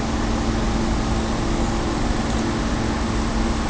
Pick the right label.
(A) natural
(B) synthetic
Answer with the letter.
A